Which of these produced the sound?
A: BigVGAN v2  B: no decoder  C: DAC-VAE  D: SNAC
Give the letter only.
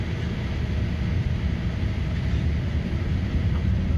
B